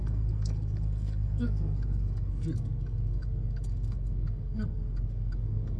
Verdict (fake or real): fake